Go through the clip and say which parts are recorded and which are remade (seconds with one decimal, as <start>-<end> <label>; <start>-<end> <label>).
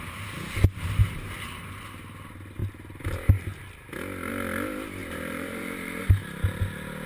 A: 0.0-1.0 recorded; 1.0-1.6 remade; 1.6-5.0 recorded; 5.0-6.0 remade; 6.0-7.1 recorded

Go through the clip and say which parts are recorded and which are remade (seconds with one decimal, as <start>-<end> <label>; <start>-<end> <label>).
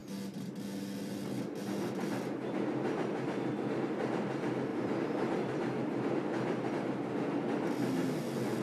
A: 0.0-4.7 recorded; 4.7-6.7 remade; 6.7-8.6 recorded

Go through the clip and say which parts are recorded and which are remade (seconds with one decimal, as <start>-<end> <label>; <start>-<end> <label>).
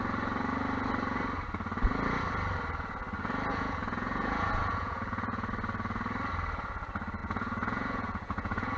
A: 0.0-3.5 recorded; 3.5-5.5 remade; 5.5-7.2 recorded; 7.2-8.8 remade